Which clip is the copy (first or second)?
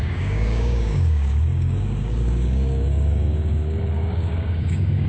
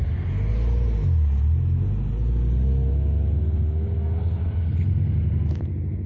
first